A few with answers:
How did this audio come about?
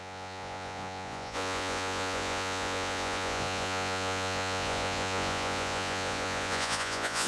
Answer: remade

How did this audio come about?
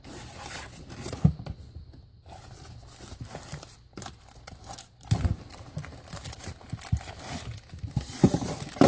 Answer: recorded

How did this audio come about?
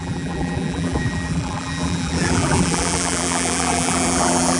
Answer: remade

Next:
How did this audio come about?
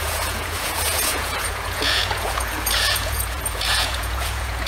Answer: remade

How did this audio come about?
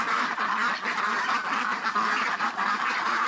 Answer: recorded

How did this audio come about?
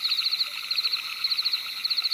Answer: recorded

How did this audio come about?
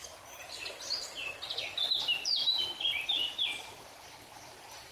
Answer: recorded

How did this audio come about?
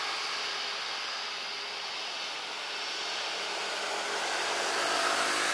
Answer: recorded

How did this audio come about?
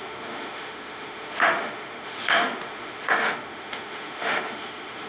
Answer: remade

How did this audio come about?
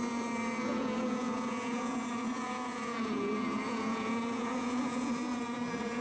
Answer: remade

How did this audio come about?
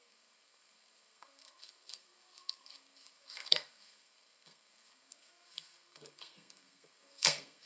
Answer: remade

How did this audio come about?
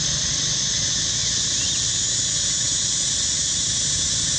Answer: recorded